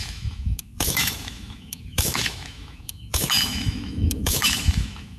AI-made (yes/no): yes